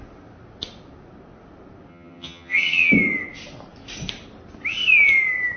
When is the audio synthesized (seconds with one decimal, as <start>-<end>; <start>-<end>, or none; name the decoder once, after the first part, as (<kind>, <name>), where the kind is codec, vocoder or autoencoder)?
1.9-2.9 (vocoder, HiFi-GAN)